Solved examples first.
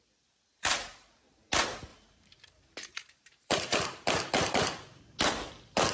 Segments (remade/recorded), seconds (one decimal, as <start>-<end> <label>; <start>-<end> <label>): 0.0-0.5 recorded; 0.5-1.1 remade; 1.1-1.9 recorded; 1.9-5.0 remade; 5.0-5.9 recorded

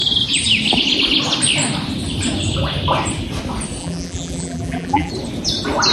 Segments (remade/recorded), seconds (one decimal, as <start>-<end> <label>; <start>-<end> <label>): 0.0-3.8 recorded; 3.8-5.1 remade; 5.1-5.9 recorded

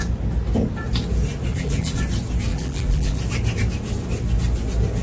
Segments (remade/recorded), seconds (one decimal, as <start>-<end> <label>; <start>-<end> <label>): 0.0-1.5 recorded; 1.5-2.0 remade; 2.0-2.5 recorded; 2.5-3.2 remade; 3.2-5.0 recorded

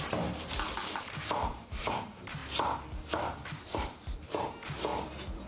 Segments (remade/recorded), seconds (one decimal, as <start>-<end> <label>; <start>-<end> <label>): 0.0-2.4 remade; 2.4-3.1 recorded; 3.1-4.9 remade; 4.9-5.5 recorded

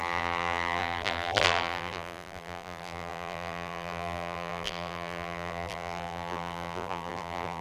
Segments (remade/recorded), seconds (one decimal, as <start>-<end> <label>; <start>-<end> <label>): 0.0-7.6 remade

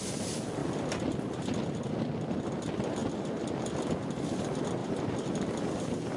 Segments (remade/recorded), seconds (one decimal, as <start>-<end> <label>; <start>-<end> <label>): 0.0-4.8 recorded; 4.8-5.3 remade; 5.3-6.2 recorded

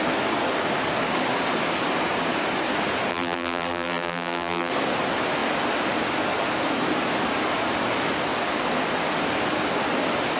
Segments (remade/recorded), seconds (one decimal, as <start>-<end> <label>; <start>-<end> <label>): 0.0-3.1 recorded; 3.1-4.7 remade; 4.7-10.4 recorded

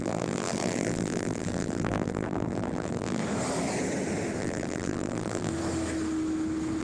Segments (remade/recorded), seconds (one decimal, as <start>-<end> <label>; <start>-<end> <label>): 0.0-3.2 remade; 3.2-4.4 recorded; 4.4-5.5 remade; 5.5-6.8 recorded